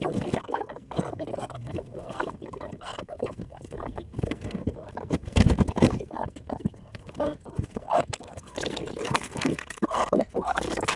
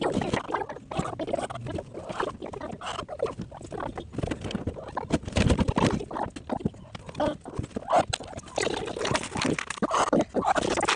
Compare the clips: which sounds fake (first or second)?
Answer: first